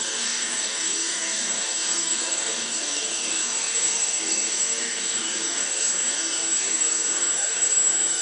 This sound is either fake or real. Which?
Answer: fake